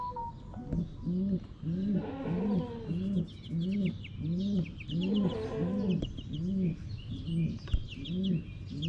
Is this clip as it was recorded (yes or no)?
yes